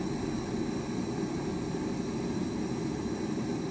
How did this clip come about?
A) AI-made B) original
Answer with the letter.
B